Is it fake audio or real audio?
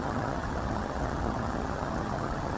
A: fake